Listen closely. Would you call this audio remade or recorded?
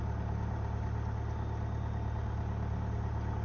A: recorded